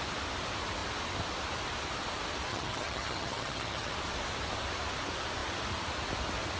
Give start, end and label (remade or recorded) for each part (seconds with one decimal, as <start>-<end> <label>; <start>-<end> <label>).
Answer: 0.0-2.5 recorded; 2.5-3.9 remade; 3.9-6.6 recorded